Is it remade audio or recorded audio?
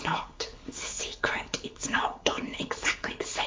remade